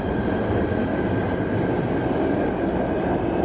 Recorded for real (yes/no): yes